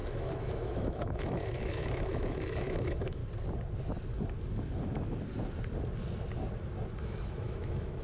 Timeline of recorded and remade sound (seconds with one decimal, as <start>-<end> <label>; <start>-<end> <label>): 0.0-3.2 remade; 3.2-7.0 recorded; 7.0-8.0 remade